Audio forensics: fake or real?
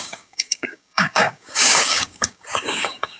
fake